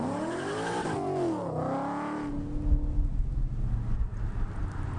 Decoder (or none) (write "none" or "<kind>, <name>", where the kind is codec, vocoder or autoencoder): none